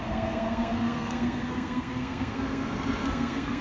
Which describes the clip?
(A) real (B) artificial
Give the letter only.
B